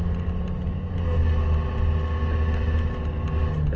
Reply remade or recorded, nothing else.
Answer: recorded